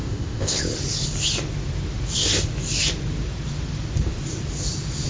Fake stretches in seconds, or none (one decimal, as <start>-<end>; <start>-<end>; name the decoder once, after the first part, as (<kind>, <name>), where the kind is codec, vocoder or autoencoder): 0.0-0.6 (codec, ZipCodec)